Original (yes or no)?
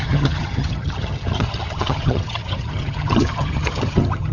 no